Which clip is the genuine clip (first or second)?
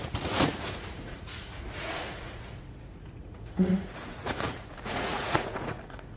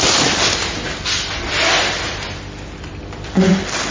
second